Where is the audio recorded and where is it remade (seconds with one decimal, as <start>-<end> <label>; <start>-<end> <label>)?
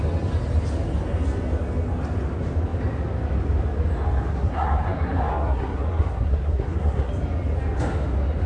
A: 0.0-4.3 recorded; 4.3-7.1 remade; 7.1-8.5 recorded